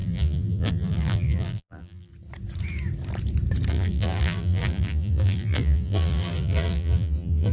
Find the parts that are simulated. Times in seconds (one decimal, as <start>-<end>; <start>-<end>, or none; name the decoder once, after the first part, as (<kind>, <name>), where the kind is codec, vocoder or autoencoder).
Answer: 0.0-2.1 (vocoder, BigVGAN v2); 3.7-7.5